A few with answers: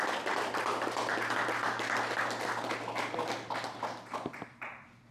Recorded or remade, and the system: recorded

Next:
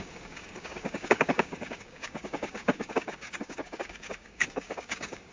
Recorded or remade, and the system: remade, codec, DAC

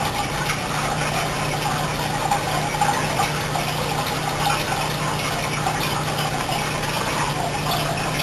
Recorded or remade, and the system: recorded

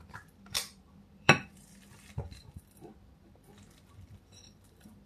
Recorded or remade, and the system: remade, vocoder, BigVGAN v2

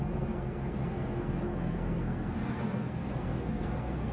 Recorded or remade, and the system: remade, codec, SNAC